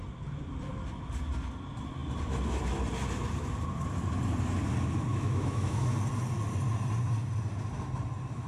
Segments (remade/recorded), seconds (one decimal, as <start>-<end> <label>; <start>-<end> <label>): 0.0-5.1 recorded; 5.1-5.9 remade; 5.9-8.5 recorded